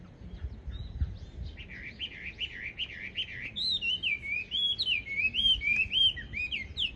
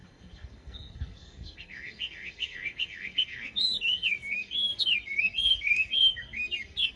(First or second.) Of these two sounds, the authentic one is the first